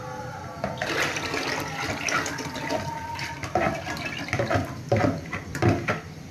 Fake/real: real